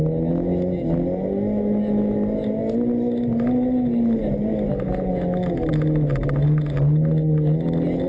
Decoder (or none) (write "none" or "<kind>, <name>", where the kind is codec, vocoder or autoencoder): none